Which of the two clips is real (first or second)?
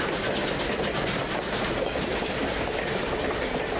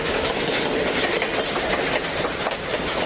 second